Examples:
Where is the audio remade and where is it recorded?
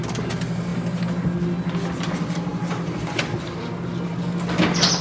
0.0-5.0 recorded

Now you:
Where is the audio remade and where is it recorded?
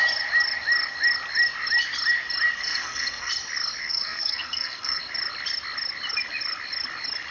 0.0-2.6 recorded; 2.6-3.3 remade; 3.3-3.8 recorded; 3.8-5.0 remade; 5.0-7.3 recorded